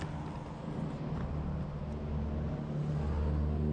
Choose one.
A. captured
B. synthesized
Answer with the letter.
A